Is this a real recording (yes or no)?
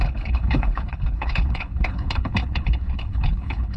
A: no